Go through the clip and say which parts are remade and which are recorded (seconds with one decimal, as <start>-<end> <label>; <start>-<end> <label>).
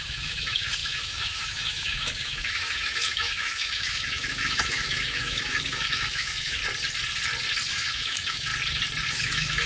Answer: 0.0-6.6 remade; 6.6-7.7 recorded; 7.7-8.5 remade; 8.5-9.1 recorded; 9.1-9.7 remade